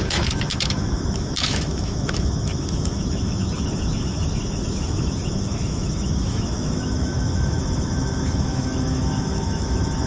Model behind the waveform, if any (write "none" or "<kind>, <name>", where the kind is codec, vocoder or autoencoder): autoencoder, DAC-VAE